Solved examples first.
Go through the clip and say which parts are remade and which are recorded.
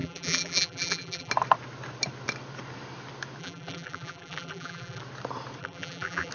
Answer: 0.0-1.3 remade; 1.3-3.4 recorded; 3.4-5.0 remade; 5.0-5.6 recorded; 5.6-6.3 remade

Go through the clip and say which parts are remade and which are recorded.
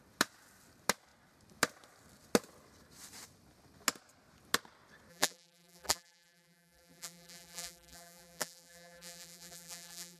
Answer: 0.0-5.1 recorded; 5.1-10.2 remade